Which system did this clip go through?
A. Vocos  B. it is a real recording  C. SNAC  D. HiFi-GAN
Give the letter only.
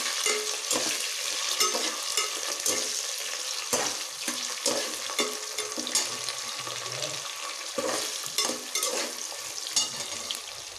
B